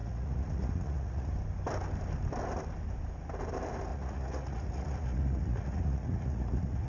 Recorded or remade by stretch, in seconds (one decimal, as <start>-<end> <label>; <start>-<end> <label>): 0.0-1.3 remade; 1.3-3.9 recorded; 3.9-6.9 remade